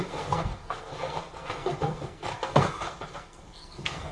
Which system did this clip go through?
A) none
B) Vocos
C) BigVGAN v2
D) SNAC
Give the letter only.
D